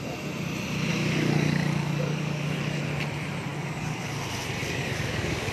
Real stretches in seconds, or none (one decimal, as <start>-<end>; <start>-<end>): 0.0-0.9; 2.8-3.5; 4.1-4.6